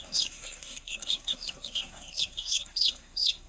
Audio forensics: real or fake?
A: fake